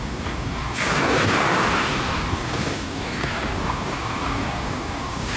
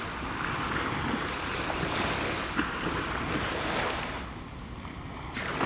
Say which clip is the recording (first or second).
second